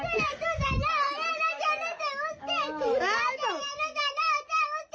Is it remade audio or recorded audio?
recorded